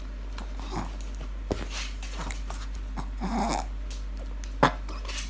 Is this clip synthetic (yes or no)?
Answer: no